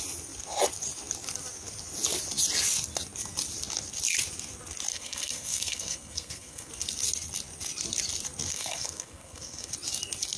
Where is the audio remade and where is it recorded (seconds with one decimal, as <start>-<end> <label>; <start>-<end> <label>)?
0.0-4.9 recorded; 4.9-6.7 remade; 6.7-8.5 recorded; 8.5-9.7 remade; 9.7-10.4 recorded